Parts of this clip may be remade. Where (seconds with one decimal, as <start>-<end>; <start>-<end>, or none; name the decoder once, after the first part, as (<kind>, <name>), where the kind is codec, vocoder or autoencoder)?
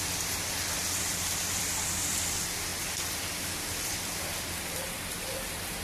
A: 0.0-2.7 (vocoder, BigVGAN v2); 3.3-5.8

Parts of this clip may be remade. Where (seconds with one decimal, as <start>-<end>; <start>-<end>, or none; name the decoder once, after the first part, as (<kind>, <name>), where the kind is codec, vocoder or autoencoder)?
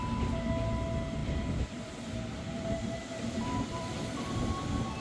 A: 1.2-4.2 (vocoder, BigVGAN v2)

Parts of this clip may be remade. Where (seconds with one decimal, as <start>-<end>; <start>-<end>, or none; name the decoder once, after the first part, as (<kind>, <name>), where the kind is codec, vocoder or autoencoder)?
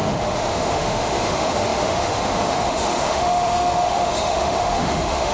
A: 0.0-5.3 (autoencoder, DAC-VAE)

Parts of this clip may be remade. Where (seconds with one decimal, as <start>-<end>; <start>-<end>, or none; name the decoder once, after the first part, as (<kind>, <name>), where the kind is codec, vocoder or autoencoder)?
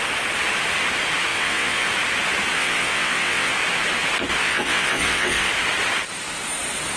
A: 1.3-1.9 (vocoder, WaveNeXt); 2.5-3.5; 4.4-5.5